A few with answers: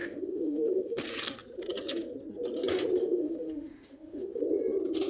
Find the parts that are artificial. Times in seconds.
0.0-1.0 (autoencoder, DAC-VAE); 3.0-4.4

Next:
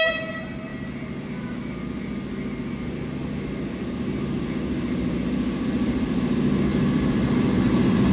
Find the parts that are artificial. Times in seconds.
6.7-8.1 (vocoder, BigVGAN v2)

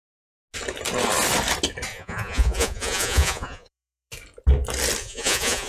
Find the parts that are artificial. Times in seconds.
1.9-4.1 (vocoder, Vocos); 5.0-5.7

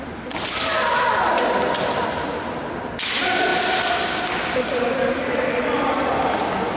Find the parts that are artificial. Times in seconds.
none

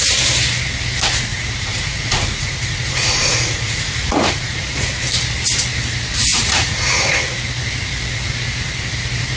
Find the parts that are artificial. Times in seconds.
1.3-4.9 (vocoder, Vocos); 6.3-7.2

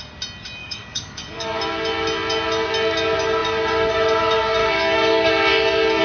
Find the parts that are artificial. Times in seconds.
0.6-1.6 (codec, DAC); 4.6-5.3

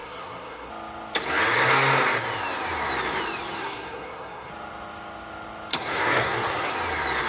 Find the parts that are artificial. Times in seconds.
0.0-0.7 (codec, SNAC); 3.6-4.5; 5.7-6.7